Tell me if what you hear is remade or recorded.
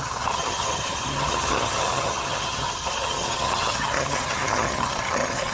remade